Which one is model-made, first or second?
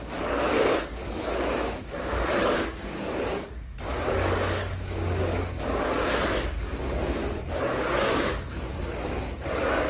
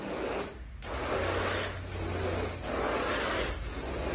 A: first